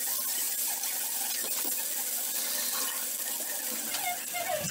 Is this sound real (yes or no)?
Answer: yes